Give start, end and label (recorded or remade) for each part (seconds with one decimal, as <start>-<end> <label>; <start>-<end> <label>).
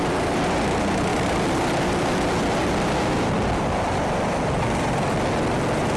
0.0-6.0 recorded